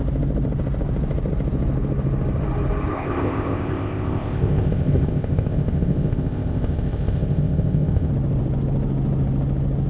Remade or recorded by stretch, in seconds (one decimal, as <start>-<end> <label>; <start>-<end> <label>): 0.0-2.9 recorded; 2.9-8.1 remade; 8.1-9.9 recorded